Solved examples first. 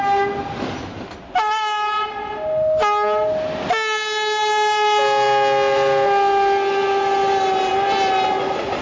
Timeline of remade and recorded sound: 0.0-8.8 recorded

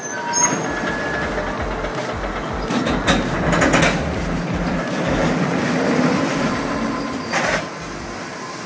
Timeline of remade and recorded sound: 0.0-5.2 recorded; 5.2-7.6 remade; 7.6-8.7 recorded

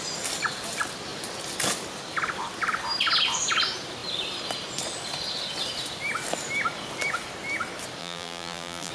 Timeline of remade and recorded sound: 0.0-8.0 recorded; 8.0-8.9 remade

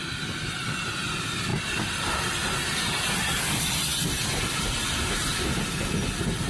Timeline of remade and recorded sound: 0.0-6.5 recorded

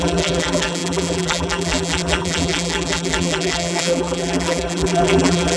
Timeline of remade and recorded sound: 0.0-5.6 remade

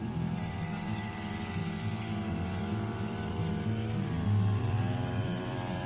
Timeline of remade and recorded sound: 0.0-1.6 remade; 1.6-2.6 recorded; 2.6-3.4 remade; 3.4-4.6 recorded; 4.6-5.9 remade